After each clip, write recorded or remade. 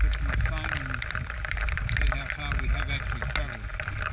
recorded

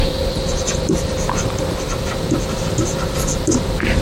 recorded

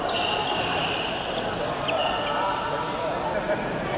recorded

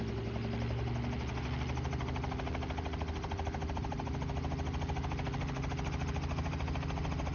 recorded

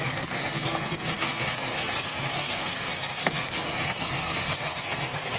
remade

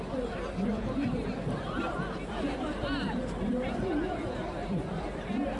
remade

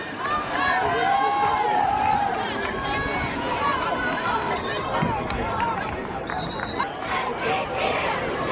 remade